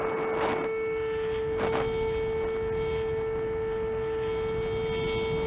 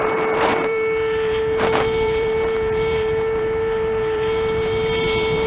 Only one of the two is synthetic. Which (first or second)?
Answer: second